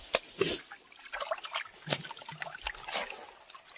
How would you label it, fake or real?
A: real